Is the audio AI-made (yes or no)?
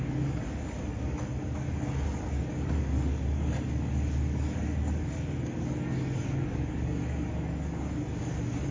yes